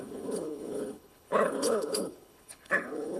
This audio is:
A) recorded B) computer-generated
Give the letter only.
B